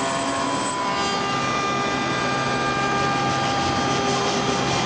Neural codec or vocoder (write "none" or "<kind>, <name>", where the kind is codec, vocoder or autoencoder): none